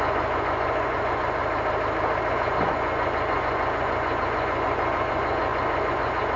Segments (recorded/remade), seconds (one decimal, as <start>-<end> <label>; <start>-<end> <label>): 0.0-1.4 remade; 1.4-2.3 recorded; 2.3-6.4 remade